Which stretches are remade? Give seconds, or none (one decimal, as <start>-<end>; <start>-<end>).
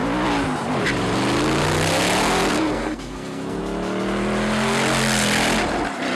2.5-3.6